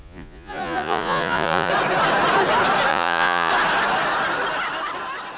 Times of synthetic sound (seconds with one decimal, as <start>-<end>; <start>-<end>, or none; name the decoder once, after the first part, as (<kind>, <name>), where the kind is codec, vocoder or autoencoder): 0.0-1.7 (vocoder, Vocos); 2.9-3.5